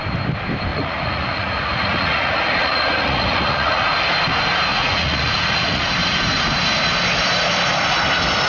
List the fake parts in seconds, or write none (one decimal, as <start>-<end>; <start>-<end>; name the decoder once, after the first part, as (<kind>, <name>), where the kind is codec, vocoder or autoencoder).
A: 0.7-3.9 (vocoder, Vocos); 4.7-5.9